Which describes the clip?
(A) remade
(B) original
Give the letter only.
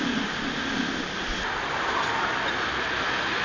B